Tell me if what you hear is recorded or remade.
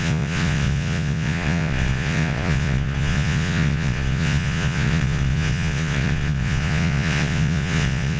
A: remade